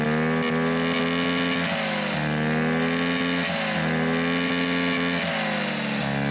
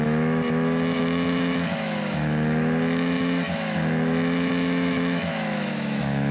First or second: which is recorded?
first